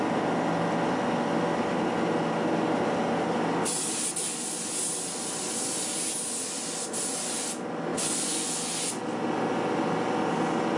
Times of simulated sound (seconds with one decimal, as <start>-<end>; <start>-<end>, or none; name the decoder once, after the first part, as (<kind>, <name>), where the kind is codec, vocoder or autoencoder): 7.9-8.5 (vocoder, Vocos)